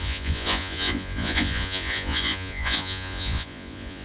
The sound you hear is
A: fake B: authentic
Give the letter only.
A